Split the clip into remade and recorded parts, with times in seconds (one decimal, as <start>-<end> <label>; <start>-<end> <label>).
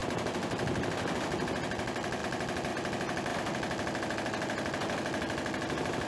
0.0-6.1 recorded